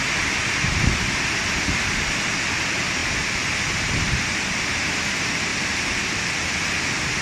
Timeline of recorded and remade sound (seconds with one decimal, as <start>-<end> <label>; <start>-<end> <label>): 0.0-5.5 recorded; 5.5-6.3 remade; 6.3-7.2 recorded